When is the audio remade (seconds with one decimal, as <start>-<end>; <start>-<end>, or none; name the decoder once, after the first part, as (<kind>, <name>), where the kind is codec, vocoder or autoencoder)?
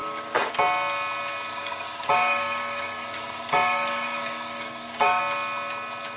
0.0-0.5 (codec, DAC); 1.5-5.2